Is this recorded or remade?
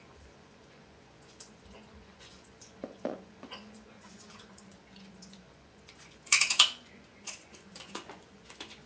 remade